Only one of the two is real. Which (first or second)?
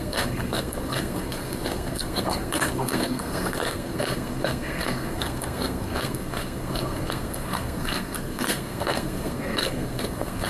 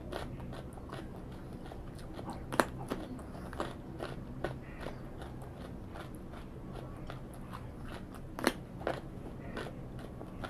second